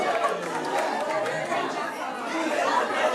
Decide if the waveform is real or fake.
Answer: real